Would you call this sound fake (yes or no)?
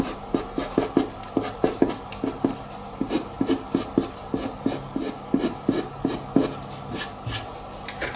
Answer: no